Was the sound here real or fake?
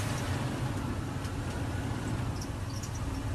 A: real